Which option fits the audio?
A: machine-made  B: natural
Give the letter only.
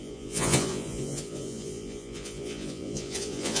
A